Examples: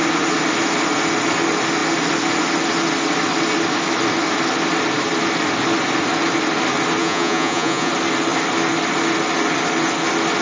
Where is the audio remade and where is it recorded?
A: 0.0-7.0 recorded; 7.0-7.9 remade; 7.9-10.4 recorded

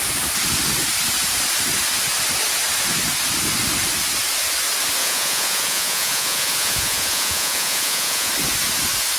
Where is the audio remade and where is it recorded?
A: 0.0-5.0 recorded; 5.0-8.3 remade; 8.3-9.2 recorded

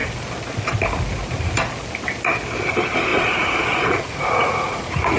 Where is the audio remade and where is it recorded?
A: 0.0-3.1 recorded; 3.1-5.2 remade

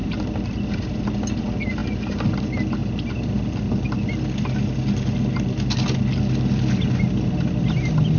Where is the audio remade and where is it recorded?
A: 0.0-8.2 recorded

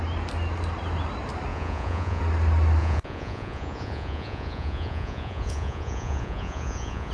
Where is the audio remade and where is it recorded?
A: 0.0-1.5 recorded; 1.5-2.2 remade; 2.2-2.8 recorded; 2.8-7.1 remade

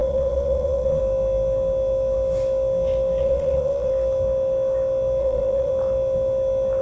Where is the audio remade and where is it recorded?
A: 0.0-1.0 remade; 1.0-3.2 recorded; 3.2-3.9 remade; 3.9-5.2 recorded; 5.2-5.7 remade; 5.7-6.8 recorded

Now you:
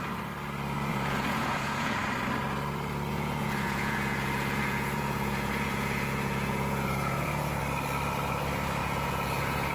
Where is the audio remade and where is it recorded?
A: 0.0-0.9 recorded; 0.9-2.0 remade; 2.0-3.1 recorded; 3.1-7.6 remade; 7.6-8.8 recorded; 8.8-9.7 remade